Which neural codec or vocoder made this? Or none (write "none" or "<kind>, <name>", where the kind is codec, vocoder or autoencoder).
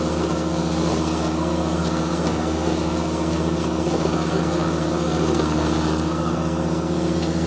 codec, SNAC